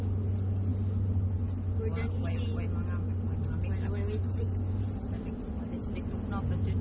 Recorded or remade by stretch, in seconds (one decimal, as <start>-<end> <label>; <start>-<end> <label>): 0.0-6.8 recorded

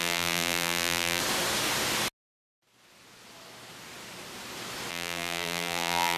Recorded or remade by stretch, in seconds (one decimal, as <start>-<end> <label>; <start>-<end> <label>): 0.0-1.2 remade; 1.2-4.9 recorded; 4.9-6.2 remade

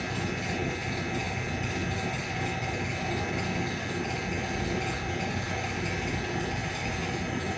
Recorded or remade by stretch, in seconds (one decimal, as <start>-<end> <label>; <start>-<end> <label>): 0.0-6.6 recorded; 6.6-7.6 remade

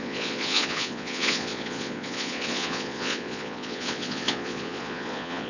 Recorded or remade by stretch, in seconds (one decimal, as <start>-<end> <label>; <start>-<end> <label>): 0.0-5.5 remade

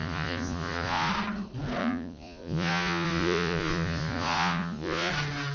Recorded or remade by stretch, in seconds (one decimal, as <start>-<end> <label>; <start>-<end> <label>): 0.0-1.1 remade; 1.1-1.8 recorded; 1.8-5.1 remade; 5.1-5.5 recorded